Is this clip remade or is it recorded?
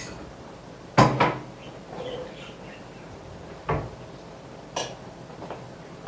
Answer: recorded